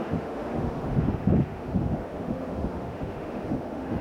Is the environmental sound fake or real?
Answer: fake